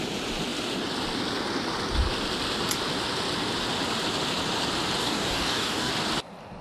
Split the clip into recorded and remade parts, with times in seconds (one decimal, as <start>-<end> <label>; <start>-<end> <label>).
0.0-5.0 recorded; 5.0-5.9 remade; 5.9-6.6 recorded

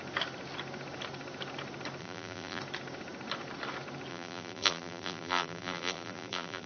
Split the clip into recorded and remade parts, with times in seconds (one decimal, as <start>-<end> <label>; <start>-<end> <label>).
0.0-2.0 recorded; 2.0-2.6 remade; 2.6-4.1 recorded; 4.1-6.7 remade

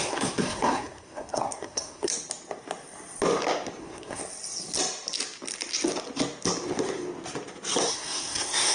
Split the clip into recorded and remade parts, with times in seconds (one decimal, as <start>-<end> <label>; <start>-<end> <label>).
0.0-2.1 remade; 2.1-3.8 recorded; 3.8-4.2 remade; 4.2-7.9 recorded; 7.9-8.7 remade

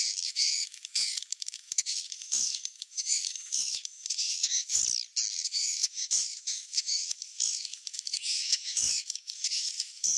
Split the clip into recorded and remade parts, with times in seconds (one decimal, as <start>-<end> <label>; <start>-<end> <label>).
0.0-4.8 remade; 4.8-5.3 recorded; 5.3-10.2 remade